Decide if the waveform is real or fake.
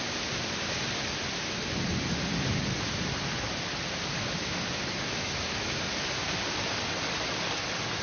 real